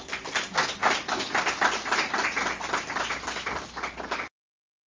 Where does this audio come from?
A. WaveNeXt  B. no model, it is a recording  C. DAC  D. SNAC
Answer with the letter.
B